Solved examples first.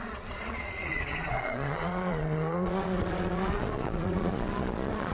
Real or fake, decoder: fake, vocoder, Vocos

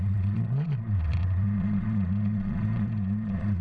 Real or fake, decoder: fake, vocoder, Vocos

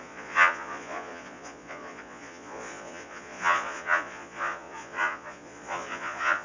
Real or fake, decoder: fake, vocoder, Vocos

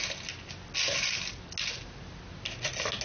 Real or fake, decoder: real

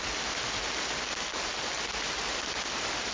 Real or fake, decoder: real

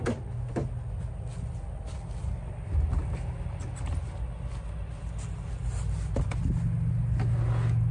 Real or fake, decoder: real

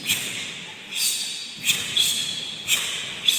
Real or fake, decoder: real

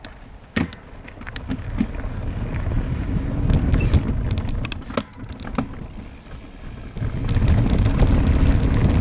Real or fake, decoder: real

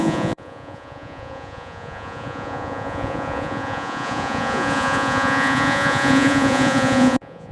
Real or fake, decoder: fake, vocoder, Vocos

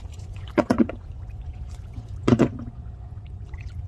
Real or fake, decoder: fake, vocoder, Vocos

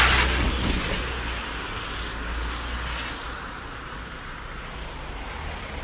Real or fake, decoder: real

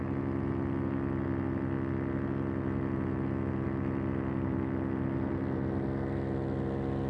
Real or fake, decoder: real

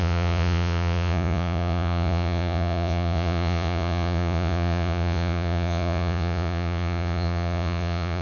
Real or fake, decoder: fake, vocoder, Vocos